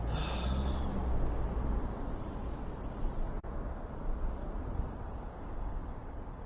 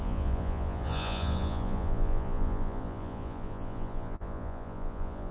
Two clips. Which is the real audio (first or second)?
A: first